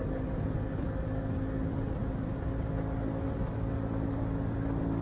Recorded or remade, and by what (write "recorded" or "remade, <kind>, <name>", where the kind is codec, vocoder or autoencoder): recorded